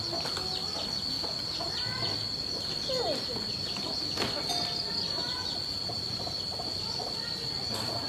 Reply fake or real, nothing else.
real